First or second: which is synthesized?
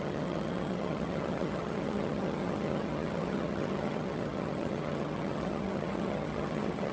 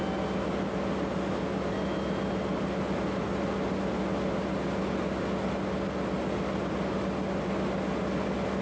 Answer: first